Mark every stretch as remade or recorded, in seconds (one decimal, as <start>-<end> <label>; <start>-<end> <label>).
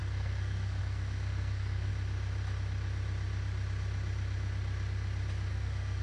0.0-1.9 remade; 1.9-5.5 recorded; 5.5-6.0 remade